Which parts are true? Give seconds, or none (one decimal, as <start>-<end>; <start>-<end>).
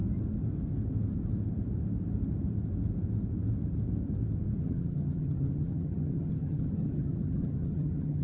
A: 0.0-4.6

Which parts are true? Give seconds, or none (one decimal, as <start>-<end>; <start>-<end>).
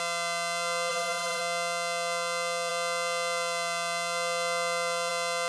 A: 0.0-0.9; 1.4-5.5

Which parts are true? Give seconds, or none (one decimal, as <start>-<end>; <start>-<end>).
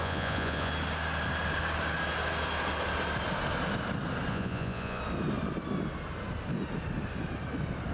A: 0.7-4.3; 5.0-7.9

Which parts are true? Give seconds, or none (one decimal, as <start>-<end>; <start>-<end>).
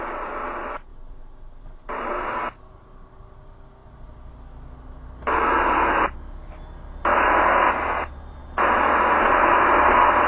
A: 0.0-10.3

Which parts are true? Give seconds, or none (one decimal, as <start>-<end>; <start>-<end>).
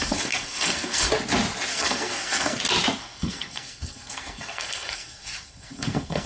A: 1.1-1.7; 2.6-3.0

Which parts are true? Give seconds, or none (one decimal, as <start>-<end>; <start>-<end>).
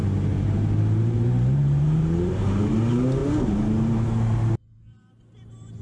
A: 2.6-5.8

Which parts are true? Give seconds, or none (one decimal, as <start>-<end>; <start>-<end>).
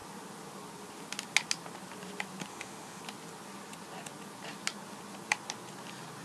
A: 0.0-2.5; 3.0-6.2